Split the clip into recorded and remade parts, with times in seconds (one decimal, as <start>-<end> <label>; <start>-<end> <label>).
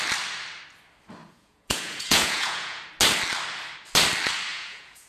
0.0-1.2 recorded; 1.2-2.8 remade; 2.8-4.5 recorded; 4.5-5.1 remade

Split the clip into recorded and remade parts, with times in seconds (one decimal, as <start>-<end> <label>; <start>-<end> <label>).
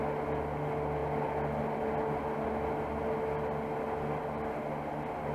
0.0-5.3 recorded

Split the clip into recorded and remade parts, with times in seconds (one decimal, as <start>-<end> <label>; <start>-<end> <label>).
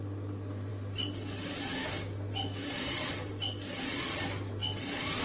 0.0-5.2 recorded